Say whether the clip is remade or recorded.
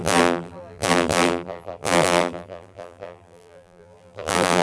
remade